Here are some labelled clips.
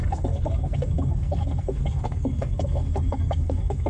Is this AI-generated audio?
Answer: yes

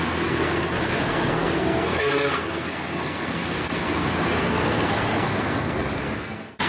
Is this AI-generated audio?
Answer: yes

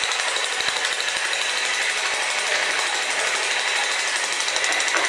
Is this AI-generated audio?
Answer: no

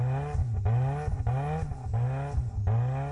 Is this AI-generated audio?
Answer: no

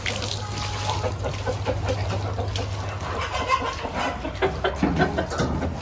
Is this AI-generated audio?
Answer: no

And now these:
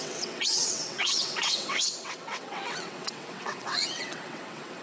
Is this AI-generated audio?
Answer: yes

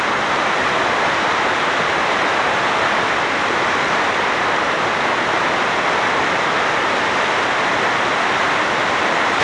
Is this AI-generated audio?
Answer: no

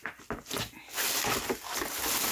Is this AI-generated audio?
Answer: no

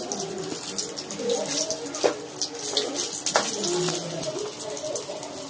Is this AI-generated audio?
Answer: no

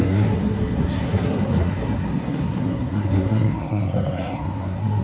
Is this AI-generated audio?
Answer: yes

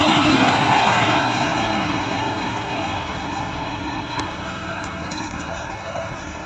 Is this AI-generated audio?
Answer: yes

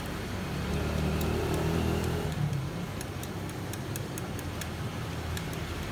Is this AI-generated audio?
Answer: no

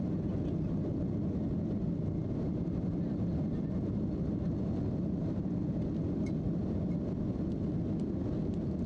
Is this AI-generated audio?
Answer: no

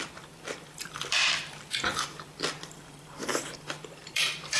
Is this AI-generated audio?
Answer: yes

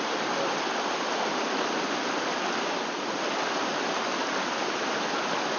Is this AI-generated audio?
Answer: no